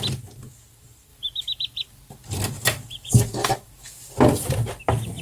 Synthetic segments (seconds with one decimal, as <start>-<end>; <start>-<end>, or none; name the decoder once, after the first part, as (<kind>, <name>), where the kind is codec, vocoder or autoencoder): none